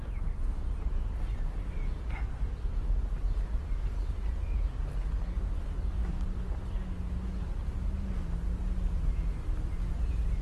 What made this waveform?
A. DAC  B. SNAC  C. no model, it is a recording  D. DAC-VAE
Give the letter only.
C